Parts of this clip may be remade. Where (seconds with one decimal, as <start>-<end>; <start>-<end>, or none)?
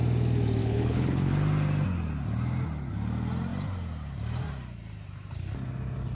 0.6-1.3